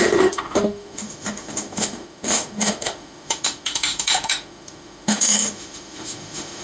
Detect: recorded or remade remade